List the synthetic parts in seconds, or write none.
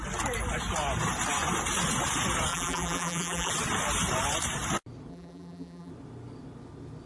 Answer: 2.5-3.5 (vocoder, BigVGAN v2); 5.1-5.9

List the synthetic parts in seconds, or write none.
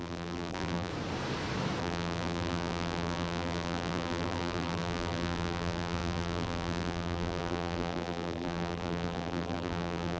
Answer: 0.0-0.9 (vocoder, BigVGAN v2); 1.8-10.2